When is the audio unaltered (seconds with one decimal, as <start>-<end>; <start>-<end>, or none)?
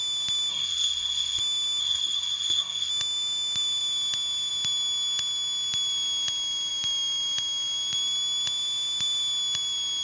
0.0-0.5; 1.4-1.8; 2.9-10.0